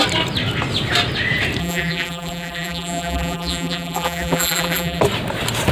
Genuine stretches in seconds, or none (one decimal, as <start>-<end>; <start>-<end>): 0.0-1.6; 5.0-5.7

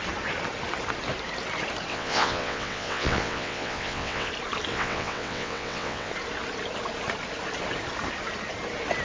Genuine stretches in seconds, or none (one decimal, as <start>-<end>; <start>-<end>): 0.0-1.9; 4.3-4.7; 6.1-9.0